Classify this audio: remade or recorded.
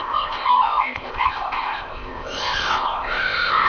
remade